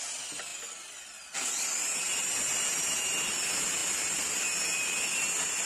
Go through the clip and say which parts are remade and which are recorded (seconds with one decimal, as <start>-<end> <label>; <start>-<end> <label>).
0.0-3.8 recorded; 3.8-4.4 remade; 4.4-5.6 recorded